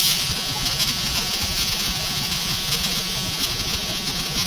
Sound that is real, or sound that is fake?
fake